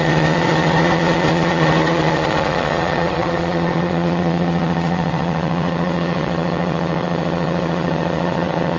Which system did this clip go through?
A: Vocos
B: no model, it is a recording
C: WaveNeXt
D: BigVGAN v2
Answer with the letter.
A